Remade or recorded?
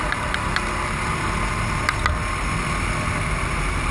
recorded